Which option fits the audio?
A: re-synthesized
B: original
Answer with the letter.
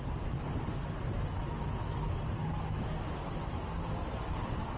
B